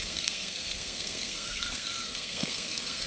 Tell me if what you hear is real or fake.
fake